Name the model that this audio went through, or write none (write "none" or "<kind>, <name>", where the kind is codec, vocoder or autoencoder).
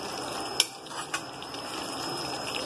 none